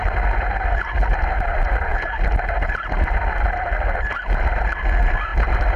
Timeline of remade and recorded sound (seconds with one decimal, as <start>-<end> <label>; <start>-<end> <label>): 0.0-5.8 recorded